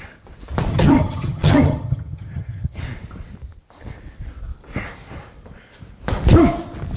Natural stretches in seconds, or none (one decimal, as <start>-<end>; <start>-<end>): 0.0-0.7; 2.8-7.0